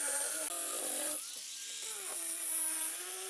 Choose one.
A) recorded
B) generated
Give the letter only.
A